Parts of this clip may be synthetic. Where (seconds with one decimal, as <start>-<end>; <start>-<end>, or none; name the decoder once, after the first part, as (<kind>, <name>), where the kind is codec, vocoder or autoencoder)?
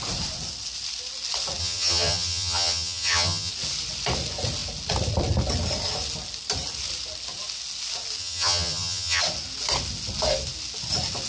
1.6-3.5 (vocoder, HiFi-GAN); 8.2-9.2